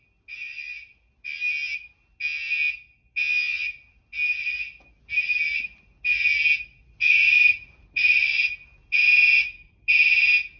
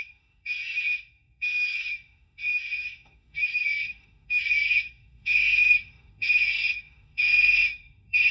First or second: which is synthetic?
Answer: second